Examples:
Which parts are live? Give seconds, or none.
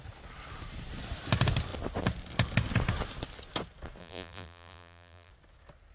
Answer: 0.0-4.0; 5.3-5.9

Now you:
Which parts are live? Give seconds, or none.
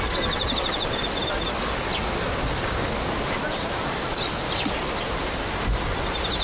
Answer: 0.0-5.2; 5.8-6.4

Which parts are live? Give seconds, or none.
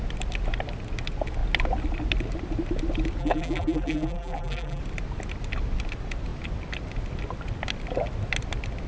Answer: 0.0-3.2; 4.8-8.9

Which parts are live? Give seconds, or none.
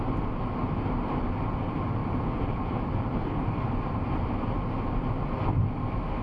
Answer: 0.0-2.0; 4.4-6.2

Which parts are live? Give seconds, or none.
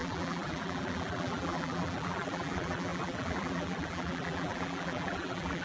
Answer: none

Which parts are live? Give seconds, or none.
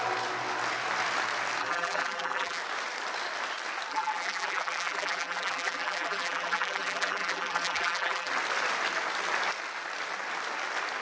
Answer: 0.0-1.6; 2.6-3.9; 8.3-11.0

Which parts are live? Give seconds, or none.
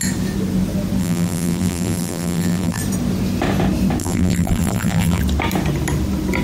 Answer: 0.0-1.0; 2.8-4.0; 5.2-6.4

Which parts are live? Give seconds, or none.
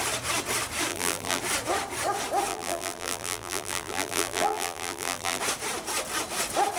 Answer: 0.0-0.9; 1.4-2.5; 5.4-6.8